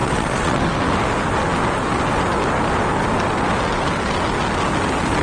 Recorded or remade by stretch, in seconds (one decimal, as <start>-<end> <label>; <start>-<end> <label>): 0.0-0.6 remade; 0.6-5.2 recorded